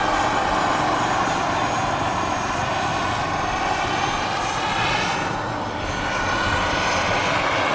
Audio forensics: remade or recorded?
recorded